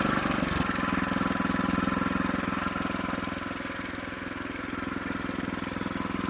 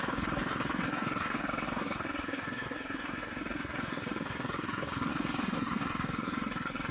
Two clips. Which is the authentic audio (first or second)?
first